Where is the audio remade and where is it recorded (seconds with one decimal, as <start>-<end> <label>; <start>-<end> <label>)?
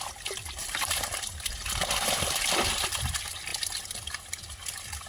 0.0-5.1 recorded